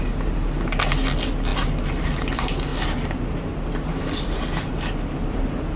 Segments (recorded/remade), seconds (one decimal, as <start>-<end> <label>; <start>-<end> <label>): 0.0-5.8 recorded